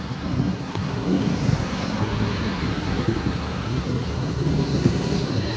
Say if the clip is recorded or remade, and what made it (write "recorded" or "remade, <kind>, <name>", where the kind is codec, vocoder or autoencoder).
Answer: remade, codec, SNAC